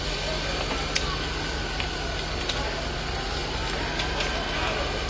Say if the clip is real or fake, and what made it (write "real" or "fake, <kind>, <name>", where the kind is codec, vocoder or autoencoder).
real